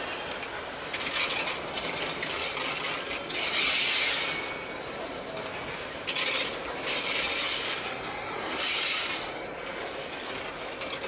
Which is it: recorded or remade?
recorded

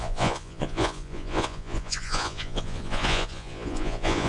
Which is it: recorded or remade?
remade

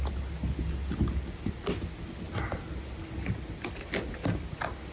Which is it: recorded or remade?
recorded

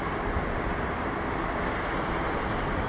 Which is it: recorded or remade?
recorded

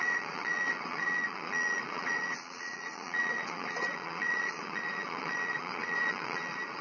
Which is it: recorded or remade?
remade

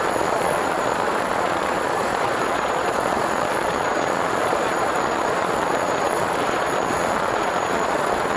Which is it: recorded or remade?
remade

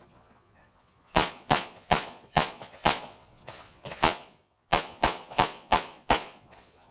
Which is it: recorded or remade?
remade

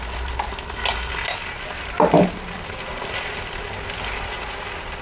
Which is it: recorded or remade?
recorded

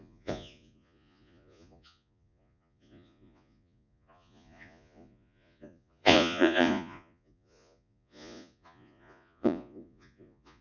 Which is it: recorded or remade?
remade